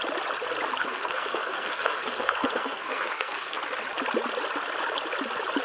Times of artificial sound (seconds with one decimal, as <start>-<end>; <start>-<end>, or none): 0.8-3.6